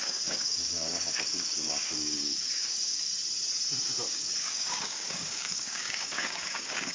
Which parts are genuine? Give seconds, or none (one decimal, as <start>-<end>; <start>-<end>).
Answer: 3.1-4.1